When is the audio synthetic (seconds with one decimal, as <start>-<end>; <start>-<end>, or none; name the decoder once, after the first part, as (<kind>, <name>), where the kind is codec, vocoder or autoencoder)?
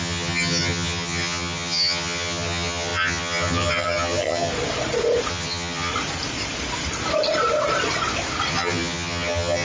0.0-4.5 (vocoder, HiFi-GAN); 5.3-5.9; 8.5-9.6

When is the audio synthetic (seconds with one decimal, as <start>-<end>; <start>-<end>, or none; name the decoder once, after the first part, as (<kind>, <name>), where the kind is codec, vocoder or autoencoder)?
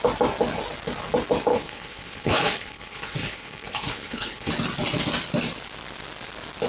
1.5-4.5 (codec, HILCodec)